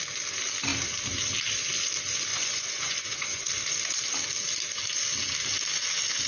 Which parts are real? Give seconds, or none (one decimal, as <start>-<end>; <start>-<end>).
0.0-2.3; 3.5-6.3